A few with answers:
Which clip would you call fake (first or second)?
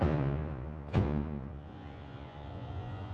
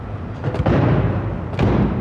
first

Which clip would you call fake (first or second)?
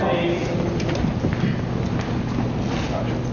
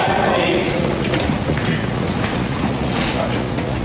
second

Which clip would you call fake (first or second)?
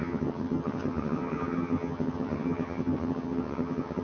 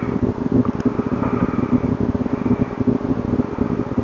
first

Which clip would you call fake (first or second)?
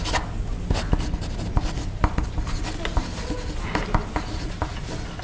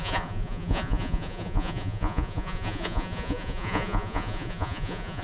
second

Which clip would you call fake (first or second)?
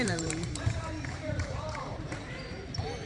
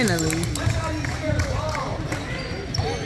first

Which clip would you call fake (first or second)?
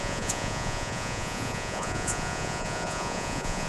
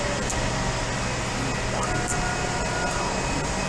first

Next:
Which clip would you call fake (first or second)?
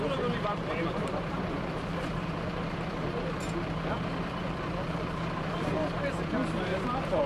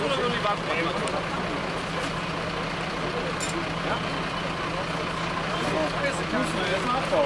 first